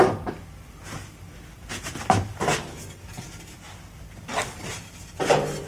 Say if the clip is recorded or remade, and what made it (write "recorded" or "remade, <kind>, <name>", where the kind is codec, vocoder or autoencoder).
recorded